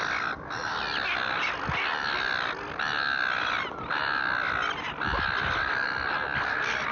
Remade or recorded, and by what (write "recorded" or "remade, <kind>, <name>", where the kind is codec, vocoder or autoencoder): recorded